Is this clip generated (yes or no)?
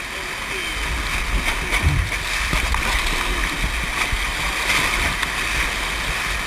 no